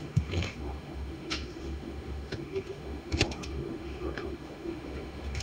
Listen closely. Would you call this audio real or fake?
fake